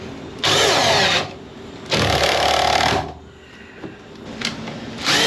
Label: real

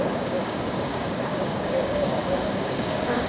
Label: fake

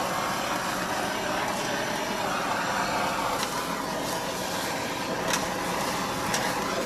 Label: real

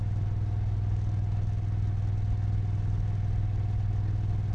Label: real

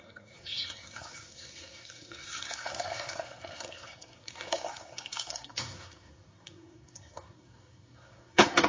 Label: fake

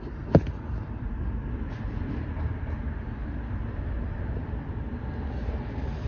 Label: real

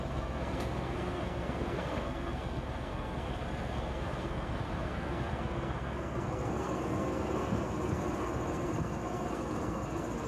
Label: fake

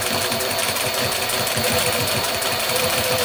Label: fake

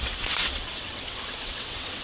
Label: fake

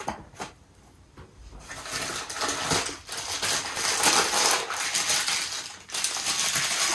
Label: real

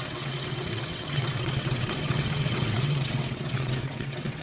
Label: fake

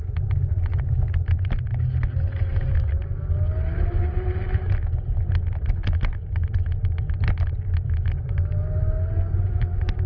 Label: real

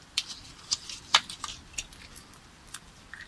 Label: fake